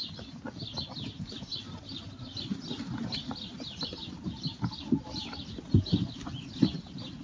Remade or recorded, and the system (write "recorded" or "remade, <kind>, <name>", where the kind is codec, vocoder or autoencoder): recorded